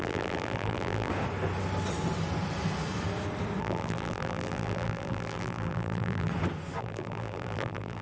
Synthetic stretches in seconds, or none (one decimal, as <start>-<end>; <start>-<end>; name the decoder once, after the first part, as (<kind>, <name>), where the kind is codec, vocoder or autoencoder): 0.0-1.1 (vocoder, BigVGAN v2); 3.6-6.3; 6.8-8.0